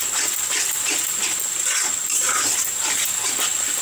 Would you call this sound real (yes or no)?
no